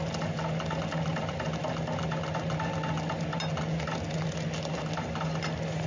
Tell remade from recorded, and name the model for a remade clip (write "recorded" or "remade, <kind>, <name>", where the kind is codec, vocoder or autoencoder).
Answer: recorded